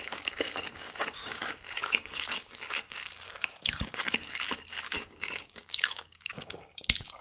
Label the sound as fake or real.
fake